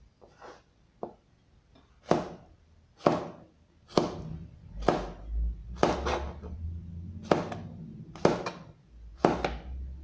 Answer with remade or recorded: recorded